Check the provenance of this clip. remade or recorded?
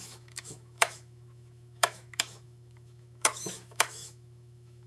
remade